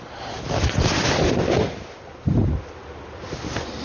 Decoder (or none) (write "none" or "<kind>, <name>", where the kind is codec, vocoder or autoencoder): none